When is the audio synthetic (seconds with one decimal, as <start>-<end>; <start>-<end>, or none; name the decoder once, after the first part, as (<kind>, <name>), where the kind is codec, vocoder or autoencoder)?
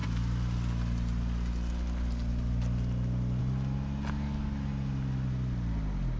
none